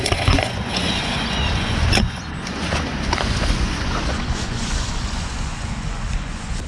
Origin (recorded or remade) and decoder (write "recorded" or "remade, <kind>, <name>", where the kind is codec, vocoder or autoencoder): remade, vocoder, Vocos